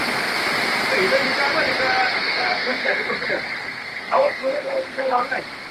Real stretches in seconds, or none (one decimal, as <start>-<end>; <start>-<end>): 0.0-2.2; 3.1-3.6; 5.2-5.7